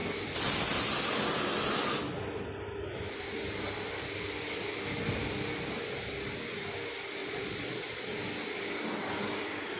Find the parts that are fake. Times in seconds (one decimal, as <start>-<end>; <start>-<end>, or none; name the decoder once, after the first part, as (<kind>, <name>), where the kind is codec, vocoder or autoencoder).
7.2-8.1 (vocoder, Vocos)